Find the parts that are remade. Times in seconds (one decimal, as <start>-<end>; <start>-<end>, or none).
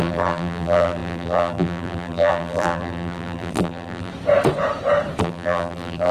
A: 0.0-4.1; 5.2-6.1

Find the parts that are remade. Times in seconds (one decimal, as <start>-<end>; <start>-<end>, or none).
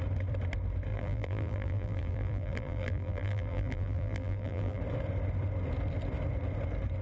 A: 0.9-4.8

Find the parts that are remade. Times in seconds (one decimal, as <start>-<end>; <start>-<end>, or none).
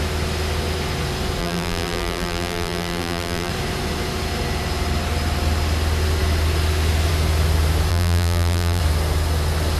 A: 1.4-3.5; 7.9-8.8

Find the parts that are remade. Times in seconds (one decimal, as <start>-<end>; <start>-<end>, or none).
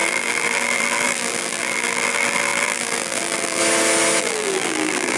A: 0.0-3.6; 4.2-5.2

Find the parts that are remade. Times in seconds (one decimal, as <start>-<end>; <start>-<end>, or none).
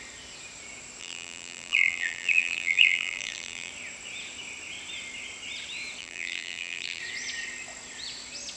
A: 1.0-3.7; 6.0-7.0